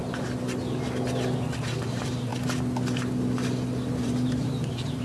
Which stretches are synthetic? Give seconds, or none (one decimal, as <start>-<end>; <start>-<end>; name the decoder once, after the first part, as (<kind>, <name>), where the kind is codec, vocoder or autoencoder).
1.6-2.3 (vocoder, BigVGAN v2); 3.9-5.0